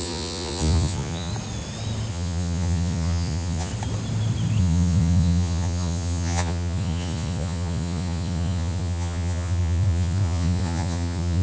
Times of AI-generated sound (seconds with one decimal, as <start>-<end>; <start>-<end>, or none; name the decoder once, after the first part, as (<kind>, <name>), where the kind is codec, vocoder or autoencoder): 0.0-1.3 (vocoder, Vocos); 2.1-3.7; 4.6-11.4